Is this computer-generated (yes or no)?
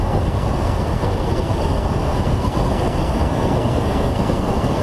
yes